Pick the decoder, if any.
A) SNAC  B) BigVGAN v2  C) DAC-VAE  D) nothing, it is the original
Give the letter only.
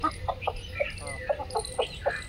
D